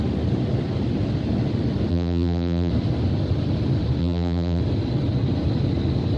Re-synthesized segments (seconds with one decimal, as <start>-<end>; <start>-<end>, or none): 1.9-2.7; 4.0-4.6